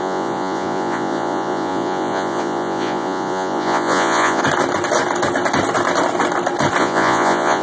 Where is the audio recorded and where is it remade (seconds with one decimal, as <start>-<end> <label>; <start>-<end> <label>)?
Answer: 0.0-4.4 remade; 4.4-6.8 recorded; 6.8-7.6 remade